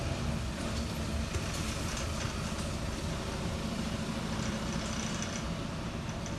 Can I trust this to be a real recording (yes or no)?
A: yes